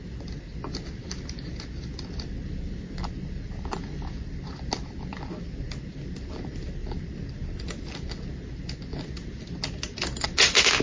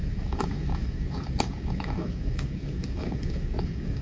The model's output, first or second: second